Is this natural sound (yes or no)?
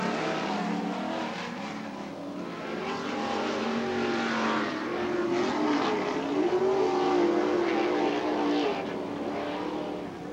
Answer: yes